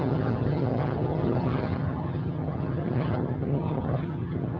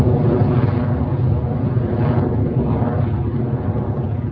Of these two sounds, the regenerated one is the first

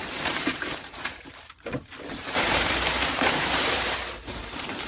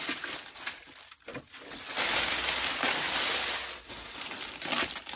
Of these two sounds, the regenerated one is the first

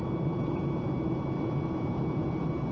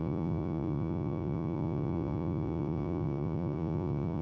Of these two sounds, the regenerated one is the second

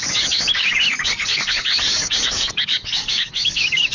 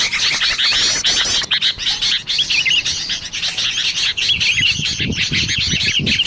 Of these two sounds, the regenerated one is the first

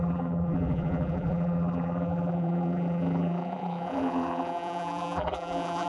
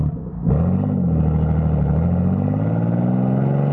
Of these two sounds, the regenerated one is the first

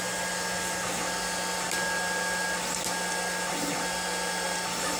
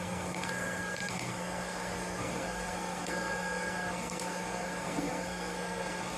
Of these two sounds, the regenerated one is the second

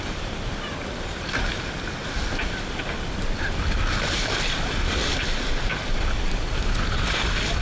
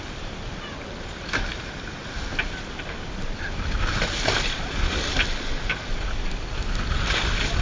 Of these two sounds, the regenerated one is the first